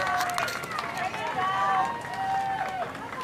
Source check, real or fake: real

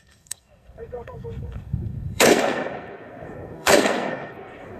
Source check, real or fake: fake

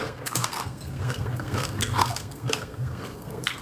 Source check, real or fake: fake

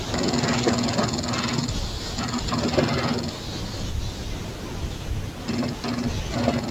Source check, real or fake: real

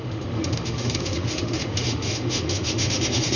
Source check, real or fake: fake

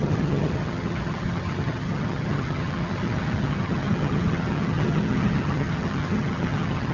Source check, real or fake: fake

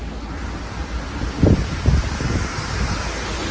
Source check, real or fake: real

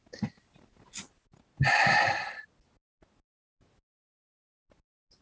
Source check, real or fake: real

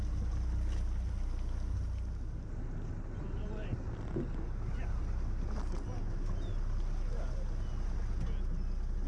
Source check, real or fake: real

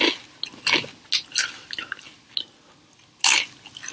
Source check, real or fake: real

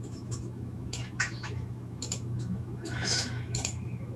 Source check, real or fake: fake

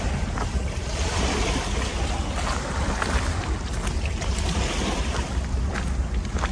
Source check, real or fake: real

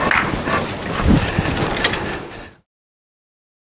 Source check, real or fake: real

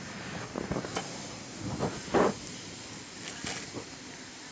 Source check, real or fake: real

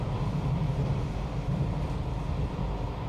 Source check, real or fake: real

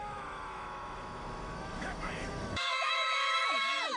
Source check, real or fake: fake